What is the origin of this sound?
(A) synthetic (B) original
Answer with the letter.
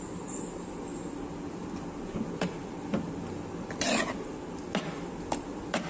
B